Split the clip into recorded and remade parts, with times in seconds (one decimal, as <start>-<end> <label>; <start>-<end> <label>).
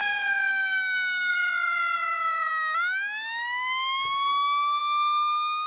0.0-0.5 remade; 0.5-1.3 recorded; 1.3-2.5 remade; 2.5-5.7 recorded